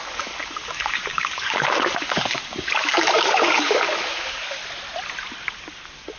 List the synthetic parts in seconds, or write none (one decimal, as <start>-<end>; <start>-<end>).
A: 0.0-4.6